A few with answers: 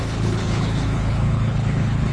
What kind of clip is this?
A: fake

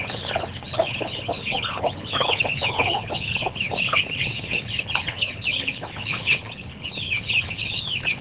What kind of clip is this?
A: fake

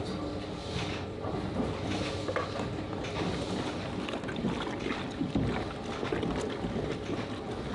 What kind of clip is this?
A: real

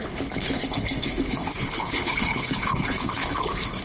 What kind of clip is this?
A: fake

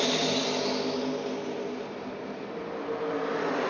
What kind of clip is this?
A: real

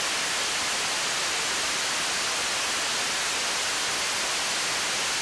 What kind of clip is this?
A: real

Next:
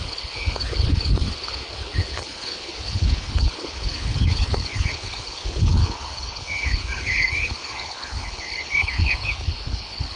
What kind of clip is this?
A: fake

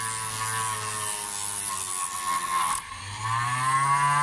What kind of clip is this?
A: real